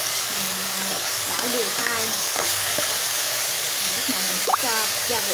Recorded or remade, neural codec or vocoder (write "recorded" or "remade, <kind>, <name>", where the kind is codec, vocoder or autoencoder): remade, codec, DAC